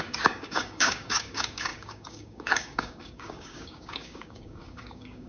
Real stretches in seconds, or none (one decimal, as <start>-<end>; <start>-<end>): none